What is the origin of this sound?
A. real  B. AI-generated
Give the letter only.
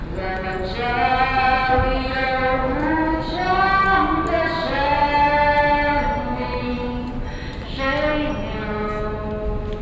A